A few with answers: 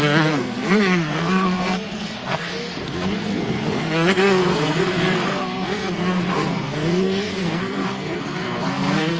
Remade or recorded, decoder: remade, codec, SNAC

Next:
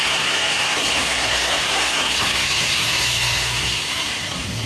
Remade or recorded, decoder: remade, codec, SNAC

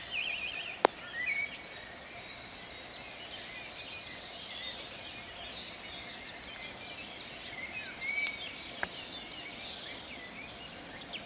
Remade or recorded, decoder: recorded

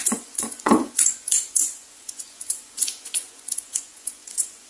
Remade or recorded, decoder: remade, vocoder, Vocos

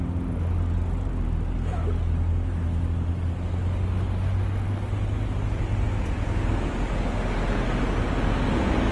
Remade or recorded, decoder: recorded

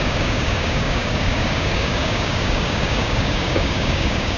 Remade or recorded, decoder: remade, codec, DAC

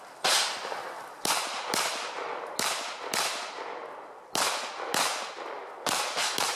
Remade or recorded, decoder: recorded